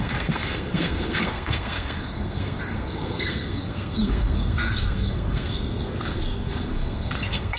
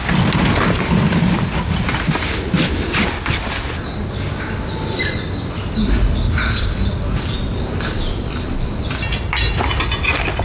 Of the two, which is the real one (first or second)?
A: second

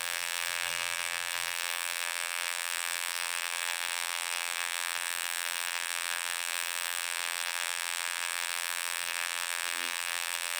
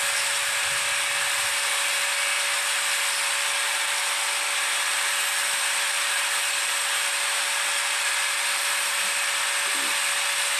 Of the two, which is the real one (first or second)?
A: second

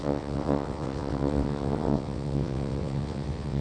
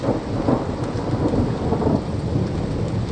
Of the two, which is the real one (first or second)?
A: second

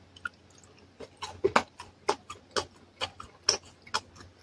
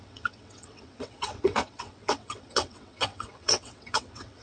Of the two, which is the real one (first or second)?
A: first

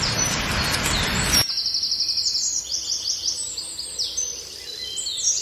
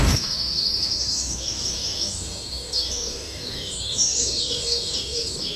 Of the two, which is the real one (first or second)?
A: first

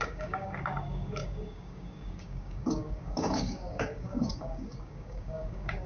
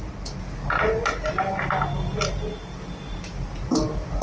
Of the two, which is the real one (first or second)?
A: second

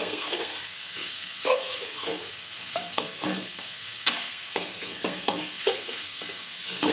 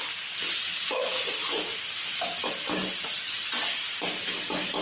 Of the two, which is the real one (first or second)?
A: second